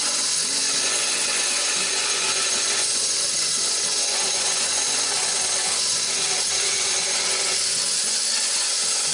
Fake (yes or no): yes